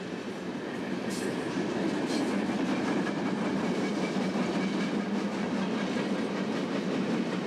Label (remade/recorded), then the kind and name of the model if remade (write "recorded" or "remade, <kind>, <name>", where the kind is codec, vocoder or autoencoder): recorded